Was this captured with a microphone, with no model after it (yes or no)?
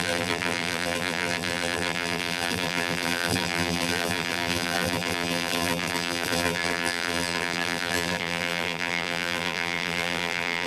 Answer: no